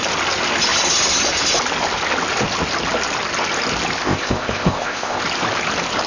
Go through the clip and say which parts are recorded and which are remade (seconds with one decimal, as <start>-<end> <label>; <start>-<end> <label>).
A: 0.0-4.0 recorded; 4.0-5.2 remade; 5.2-6.1 recorded